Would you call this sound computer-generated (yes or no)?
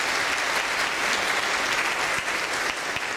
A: no